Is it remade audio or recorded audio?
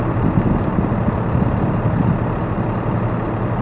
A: recorded